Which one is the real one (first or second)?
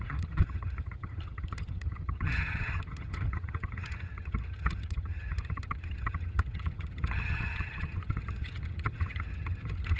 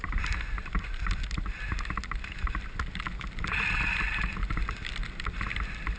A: second